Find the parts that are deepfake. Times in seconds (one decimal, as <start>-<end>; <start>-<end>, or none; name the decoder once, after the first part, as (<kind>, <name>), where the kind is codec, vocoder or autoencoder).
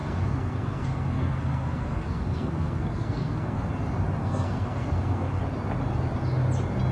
0.0-3.7 (codec, SNAC); 4.2-5.4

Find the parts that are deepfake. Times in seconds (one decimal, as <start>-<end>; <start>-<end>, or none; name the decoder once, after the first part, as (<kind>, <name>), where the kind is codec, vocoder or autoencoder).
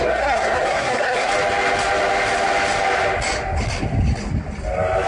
0.0-1.3 (codec, SNAC)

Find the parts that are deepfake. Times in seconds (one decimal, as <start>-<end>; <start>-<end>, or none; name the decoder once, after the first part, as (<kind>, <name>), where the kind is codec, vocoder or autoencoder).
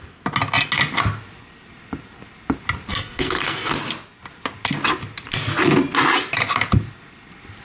2.9-3.7 (codec, SNAC)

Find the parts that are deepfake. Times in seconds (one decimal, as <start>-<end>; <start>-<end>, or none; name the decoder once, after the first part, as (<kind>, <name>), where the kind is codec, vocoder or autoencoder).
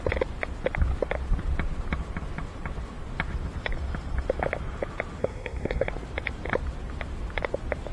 5.2-5.9 (codec, SNAC)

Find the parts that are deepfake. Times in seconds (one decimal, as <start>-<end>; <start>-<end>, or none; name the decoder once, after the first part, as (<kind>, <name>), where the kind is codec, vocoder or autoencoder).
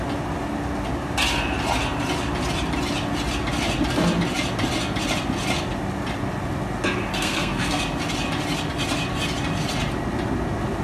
7.1-7.8 (codec, SNAC)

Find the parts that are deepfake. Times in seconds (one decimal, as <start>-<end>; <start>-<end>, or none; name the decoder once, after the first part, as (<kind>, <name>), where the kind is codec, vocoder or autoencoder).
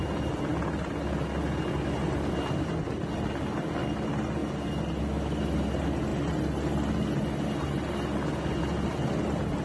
none